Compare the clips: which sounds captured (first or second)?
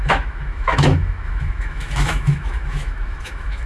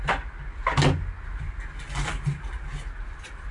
second